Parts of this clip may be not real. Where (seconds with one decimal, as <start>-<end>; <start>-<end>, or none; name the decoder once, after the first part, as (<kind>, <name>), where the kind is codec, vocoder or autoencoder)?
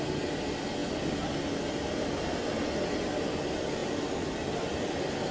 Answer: none